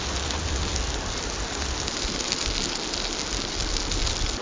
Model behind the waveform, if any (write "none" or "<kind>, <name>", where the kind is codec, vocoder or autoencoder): none